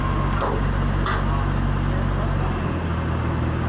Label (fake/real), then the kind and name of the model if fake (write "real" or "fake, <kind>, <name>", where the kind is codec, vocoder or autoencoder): real